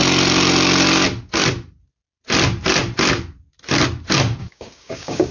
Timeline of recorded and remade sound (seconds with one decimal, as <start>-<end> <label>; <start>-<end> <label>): 0.0-4.4 recorded; 4.4-5.3 remade

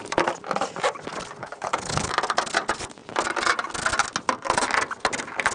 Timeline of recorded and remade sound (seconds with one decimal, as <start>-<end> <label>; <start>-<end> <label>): 0.0-1.4 recorded; 1.4-2.1 remade; 2.1-5.5 recorded